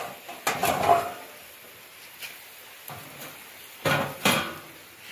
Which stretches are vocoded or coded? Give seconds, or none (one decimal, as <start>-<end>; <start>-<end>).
none